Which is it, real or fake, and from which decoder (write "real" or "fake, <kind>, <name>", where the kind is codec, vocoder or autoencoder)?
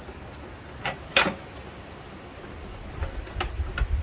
real